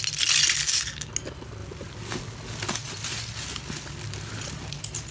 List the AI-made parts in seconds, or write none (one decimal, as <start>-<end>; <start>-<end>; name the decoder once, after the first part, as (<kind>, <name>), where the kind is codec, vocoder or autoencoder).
0.6-1.1 (codec, DAC)